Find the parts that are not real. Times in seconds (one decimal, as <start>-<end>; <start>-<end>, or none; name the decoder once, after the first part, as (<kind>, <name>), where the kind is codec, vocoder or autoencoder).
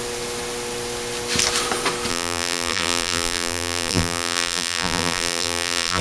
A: 2.1-6.0 (vocoder, BigVGAN v2)